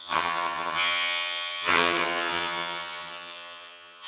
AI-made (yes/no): yes